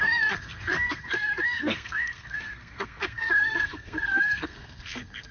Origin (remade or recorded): remade